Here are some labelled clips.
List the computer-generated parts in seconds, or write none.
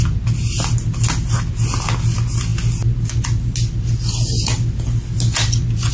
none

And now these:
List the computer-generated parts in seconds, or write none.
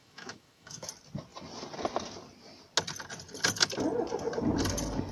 0.0-0.9 (autoencoder, DAC-VAE)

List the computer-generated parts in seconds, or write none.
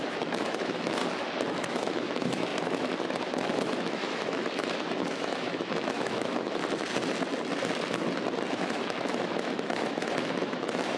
0.0-1.0 (autoencoder, DAC-VAE); 1.5-2.5; 3.2-6.6; 8.5-11.0